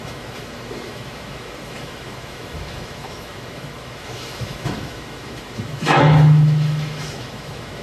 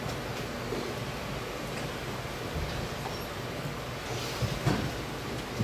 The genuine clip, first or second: second